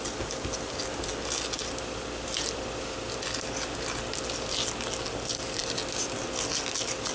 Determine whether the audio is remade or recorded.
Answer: recorded